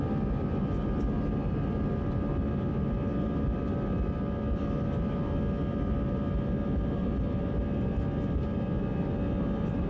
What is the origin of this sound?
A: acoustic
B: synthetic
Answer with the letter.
A